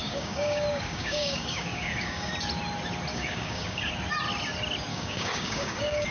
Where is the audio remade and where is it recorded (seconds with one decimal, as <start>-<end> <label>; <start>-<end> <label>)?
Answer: 0.0-2.3 remade; 2.3-3.1 recorded; 3.1-3.9 remade; 3.9-4.9 recorded; 4.9-6.1 remade